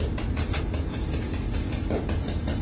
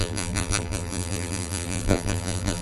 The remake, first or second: second